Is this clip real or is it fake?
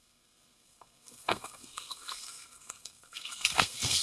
fake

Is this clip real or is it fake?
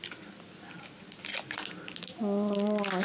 real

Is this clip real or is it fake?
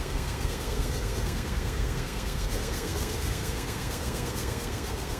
fake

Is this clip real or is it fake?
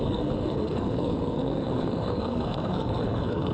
fake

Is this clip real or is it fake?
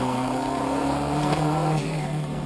fake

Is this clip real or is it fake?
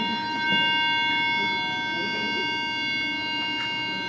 real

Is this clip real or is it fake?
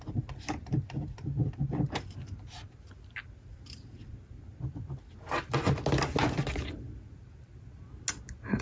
real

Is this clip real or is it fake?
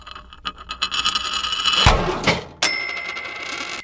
real